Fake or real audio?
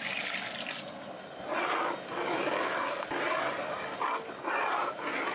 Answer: real